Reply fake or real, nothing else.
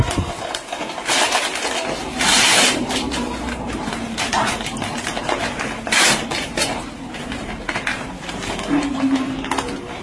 fake